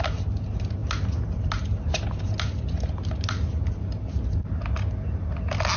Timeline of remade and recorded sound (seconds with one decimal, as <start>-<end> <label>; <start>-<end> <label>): 0.0-5.8 recorded